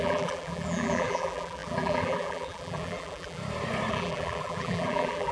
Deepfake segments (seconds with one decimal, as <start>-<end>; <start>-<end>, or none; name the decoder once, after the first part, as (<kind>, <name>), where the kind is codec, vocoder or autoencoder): 0.0-3.4 (vocoder, BigVGAN v2); 3.9-5.3